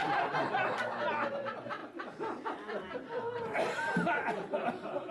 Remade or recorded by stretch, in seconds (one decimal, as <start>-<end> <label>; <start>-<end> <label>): 0.0-5.1 recorded